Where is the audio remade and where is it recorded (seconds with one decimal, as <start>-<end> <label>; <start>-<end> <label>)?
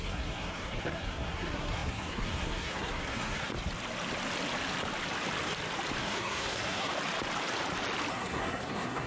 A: 0.0-3.5 remade; 3.5-6.0 recorded; 6.0-6.9 remade; 6.9-8.1 recorded; 8.1-9.1 remade